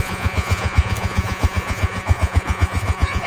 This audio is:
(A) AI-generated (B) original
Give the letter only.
A